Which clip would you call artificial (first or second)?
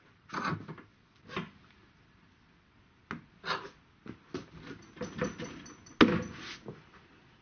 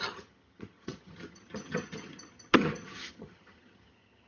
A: second